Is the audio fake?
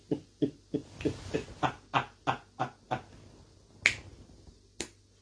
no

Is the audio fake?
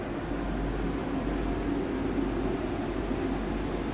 no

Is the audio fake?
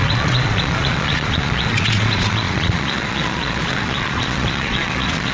yes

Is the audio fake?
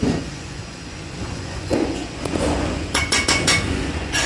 yes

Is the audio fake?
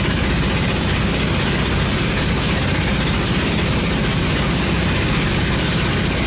no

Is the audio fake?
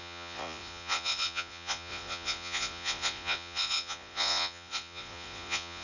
yes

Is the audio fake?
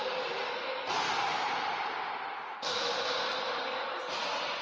no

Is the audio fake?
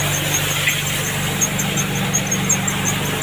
no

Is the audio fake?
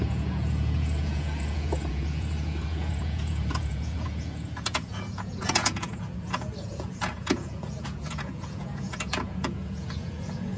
yes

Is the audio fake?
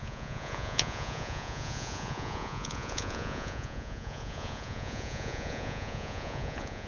yes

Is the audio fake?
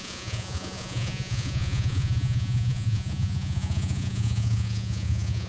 yes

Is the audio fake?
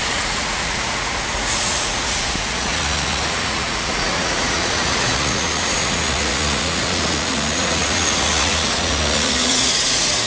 yes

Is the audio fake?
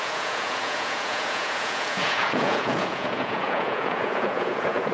yes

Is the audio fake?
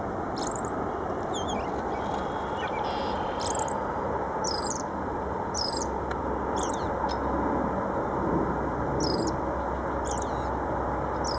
no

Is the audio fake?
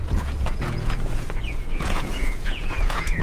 yes